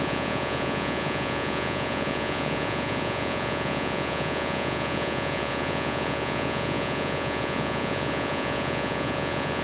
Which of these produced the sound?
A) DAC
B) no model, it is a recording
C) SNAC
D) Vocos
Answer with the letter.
D